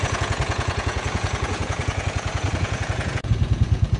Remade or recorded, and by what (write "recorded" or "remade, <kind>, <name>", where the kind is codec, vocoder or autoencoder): remade, vocoder, Vocos